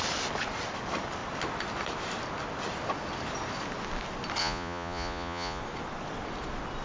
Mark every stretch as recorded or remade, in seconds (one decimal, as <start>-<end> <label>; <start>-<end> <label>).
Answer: 0.0-4.4 recorded; 4.4-5.6 remade; 5.6-6.8 recorded